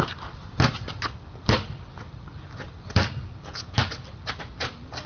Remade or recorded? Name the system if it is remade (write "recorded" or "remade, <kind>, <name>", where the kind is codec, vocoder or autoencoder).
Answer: recorded